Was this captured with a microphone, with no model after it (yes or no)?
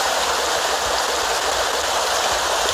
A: yes